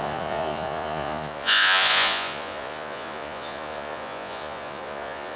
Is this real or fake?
fake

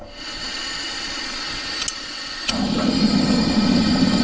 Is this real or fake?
real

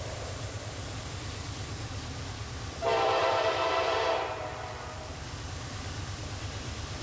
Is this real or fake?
fake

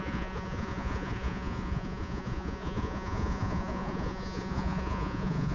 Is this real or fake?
fake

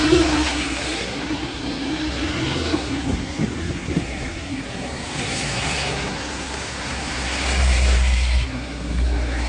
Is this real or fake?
fake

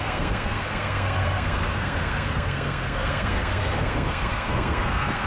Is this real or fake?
fake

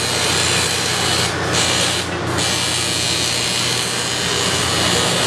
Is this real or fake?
real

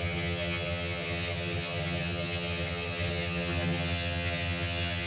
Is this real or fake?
fake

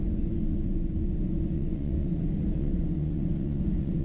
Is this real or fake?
fake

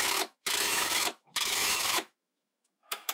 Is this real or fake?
fake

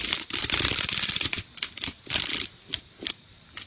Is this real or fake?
real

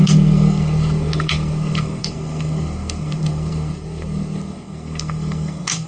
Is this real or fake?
fake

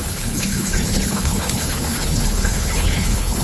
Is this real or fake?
fake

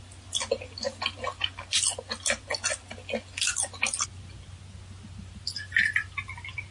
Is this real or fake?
real